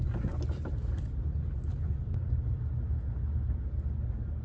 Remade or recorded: recorded